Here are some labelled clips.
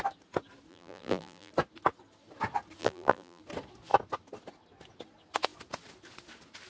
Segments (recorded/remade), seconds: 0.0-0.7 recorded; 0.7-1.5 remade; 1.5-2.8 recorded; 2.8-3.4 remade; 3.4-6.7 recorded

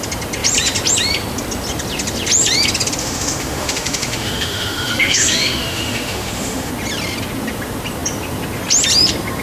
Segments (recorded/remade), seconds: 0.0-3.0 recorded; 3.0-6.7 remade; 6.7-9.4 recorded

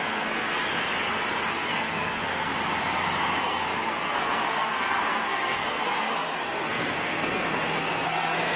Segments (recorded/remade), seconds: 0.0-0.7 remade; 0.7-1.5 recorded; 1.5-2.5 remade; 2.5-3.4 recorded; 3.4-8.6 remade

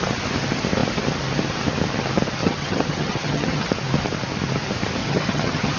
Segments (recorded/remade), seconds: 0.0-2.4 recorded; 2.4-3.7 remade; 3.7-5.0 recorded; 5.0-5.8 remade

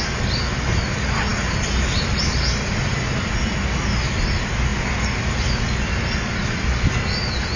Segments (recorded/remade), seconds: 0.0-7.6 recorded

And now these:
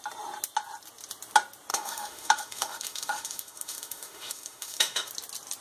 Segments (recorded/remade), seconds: 0.0-1.7 recorded; 1.7-5.1 remade; 5.1-5.6 recorded